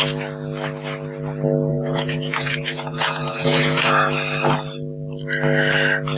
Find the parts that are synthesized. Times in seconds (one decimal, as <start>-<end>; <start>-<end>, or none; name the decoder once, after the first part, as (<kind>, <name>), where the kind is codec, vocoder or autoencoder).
1.7-3.9 (vocoder, Vocos)